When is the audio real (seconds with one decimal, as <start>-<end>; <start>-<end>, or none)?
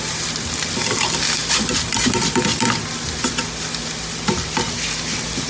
0.0-5.5